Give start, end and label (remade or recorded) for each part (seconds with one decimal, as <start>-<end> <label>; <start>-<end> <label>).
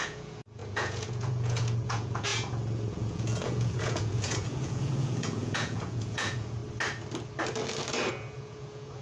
0.0-6.6 remade; 6.6-8.1 recorded; 8.1-9.0 remade